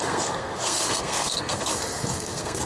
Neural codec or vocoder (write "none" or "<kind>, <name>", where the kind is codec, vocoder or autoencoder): codec, SNAC